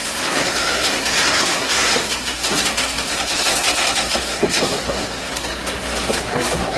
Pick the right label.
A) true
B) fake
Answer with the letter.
B